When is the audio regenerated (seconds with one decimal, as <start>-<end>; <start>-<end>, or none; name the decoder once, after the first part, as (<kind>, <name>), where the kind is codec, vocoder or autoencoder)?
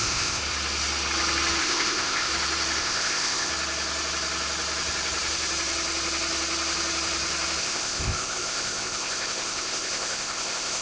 0.0-0.4 (codec, ZipCodec); 1.6-2.3; 2.8-3.5; 7.6-10.8